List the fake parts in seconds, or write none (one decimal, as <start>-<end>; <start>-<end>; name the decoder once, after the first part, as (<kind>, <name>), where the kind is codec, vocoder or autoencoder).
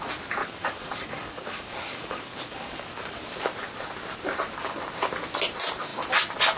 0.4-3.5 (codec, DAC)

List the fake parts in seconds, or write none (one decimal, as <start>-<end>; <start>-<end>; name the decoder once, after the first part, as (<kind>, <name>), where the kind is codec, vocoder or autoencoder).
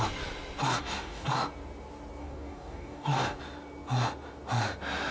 0.6-1.3 (codec, DAC); 2.2-3.4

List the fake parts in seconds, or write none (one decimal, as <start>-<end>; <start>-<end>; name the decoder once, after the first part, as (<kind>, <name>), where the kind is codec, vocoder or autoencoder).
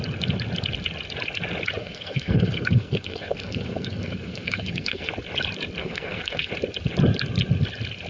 1.8-5.1 (codec, SNAC); 5.8-6.5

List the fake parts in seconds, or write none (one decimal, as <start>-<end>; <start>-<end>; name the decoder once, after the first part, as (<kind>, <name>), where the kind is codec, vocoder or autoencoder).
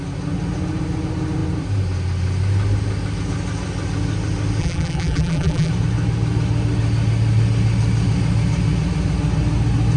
4.6-5.7 (vocoder, BigVGAN v2)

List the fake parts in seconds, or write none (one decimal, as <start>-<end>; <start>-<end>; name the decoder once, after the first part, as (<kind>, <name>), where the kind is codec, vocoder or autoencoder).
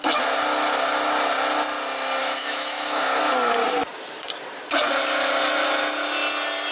2.2-3.2 (autoencoder, DAC-VAE)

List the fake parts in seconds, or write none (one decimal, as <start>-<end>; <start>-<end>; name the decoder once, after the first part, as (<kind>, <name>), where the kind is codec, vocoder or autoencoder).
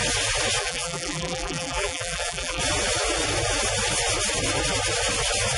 0.6-2.6 (vocoder, BigVGAN v2)